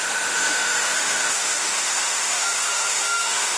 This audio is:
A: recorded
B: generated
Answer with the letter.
B